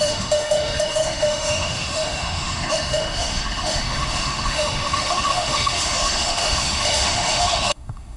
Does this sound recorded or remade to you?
remade